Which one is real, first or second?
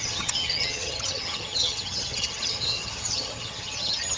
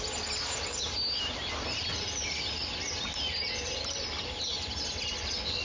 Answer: second